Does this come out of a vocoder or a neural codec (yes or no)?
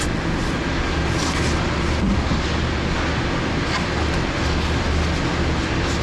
no